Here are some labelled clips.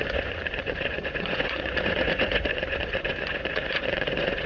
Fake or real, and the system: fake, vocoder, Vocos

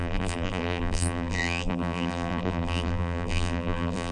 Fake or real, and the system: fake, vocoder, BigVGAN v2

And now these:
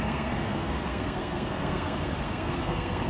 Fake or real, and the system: fake, codec, SNAC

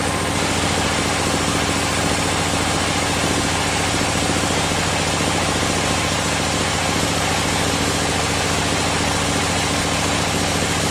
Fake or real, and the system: real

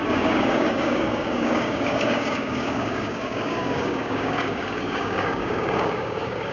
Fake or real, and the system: fake, codec, DAC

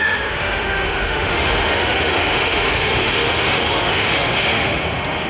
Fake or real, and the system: fake, autoencoder, DAC-VAE